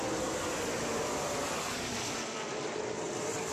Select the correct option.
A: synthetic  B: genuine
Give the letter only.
A